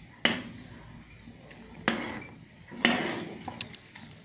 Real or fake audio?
real